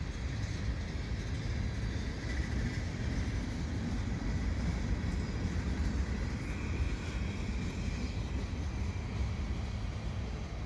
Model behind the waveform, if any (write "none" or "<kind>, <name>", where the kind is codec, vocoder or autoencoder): none